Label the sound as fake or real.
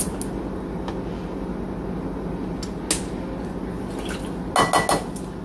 real